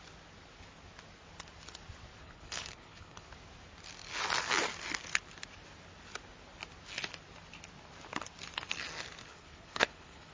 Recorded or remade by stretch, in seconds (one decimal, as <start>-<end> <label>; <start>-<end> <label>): 0.0-2.2 recorded; 2.2-3.3 remade; 3.3-9.2 recorded; 9.2-10.3 remade